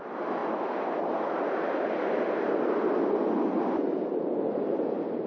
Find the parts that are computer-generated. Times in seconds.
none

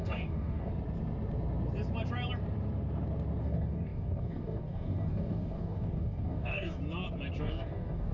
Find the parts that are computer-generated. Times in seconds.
0.0-0.7 (codec, DAC); 3.4-6.8; 7.4-8.1

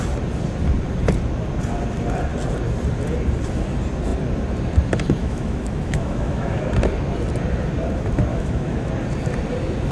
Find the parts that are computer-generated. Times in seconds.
5.2-6.7 (autoencoder, DAC-VAE); 8.3-8.9

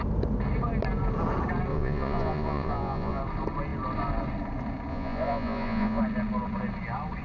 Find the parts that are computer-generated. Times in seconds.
1.7-3.2 (vocoder, Vocos); 4.9-6.0

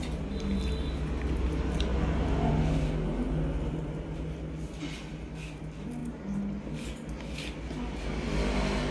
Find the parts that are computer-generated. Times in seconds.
none

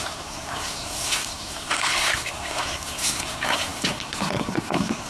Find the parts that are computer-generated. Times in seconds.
0.0-5.1 (codec, SNAC)

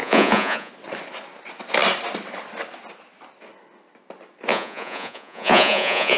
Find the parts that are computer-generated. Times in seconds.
0.0-0.7 (vocoder, Vocos); 4.5-6.2

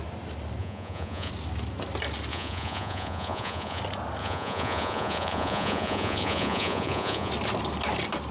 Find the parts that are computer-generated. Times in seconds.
0.6-1.3 (vocoder, Vocos); 2.3-3.8; 4.2-7.3